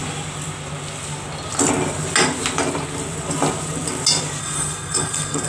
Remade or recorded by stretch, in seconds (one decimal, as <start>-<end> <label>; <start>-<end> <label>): 0.0-4.4 recorded; 4.4-5.5 remade